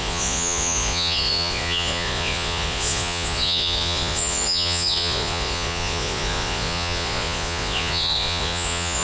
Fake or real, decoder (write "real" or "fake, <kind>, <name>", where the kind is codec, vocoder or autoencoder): fake, vocoder, Vocos